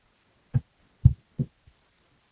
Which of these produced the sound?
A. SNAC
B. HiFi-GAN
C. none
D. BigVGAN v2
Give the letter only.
C